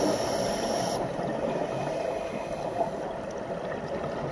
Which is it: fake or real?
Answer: real